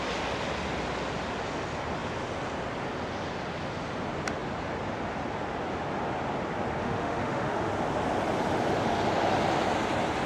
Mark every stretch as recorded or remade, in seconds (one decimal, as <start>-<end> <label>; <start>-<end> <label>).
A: 0.0-6.8 recorded; 6.8-7.7 remade; 7.7-10.3 recorded